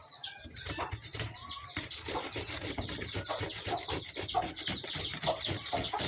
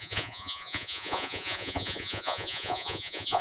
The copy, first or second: second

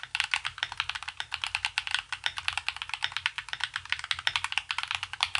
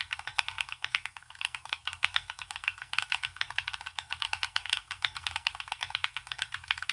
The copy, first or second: second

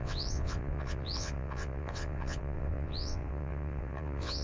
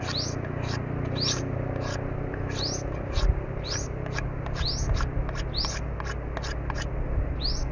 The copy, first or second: first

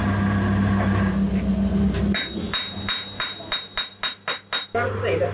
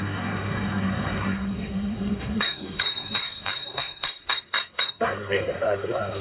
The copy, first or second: second